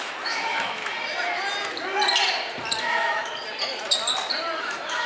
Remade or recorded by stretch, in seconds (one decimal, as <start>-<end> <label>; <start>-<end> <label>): 0.0-0.8 remade; 0.8-2.8 recorded; 2.8-3.3 remade; 3.3-4.6 recorded; 4.6-5.1 remade